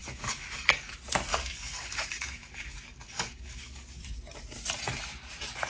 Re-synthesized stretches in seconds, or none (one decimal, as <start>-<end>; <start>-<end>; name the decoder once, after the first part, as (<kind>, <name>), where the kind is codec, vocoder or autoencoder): 0.0-0.9 (codec, DAC); 1.3-4.0